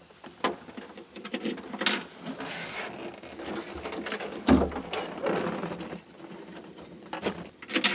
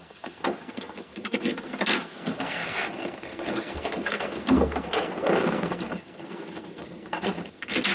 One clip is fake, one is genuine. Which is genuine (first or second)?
first